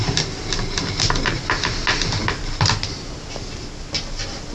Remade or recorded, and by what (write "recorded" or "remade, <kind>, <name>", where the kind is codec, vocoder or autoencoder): recorded